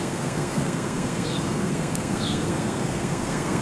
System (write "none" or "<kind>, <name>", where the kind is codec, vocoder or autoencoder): codec, SNAC